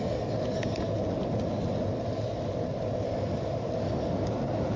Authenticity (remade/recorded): recorded